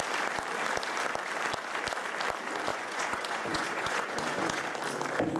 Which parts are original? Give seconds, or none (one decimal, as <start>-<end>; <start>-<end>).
0.0-2.7; 4.6-5.4